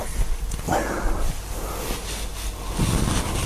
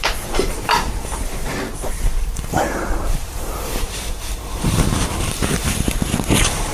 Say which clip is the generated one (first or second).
second